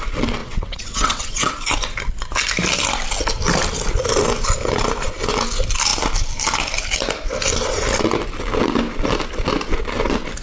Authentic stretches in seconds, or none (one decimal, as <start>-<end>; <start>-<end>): 0.0-0.4; 1.5-10.4